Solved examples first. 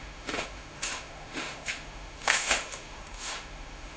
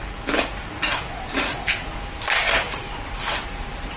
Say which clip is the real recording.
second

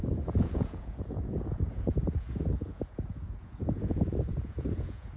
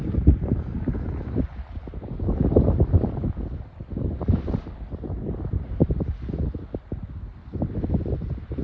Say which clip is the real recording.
second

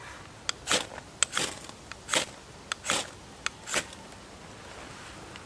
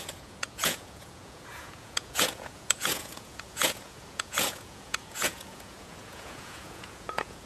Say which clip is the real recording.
first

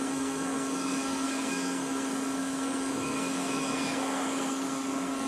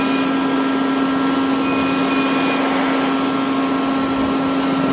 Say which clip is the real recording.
second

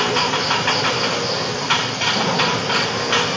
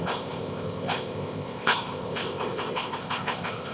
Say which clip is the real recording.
first